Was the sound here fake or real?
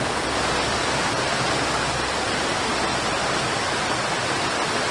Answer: real